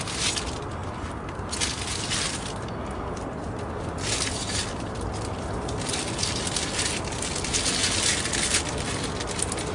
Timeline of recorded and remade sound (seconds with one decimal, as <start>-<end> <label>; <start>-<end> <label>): 0.0-9.7 recorded